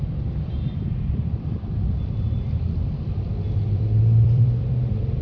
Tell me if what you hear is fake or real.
fake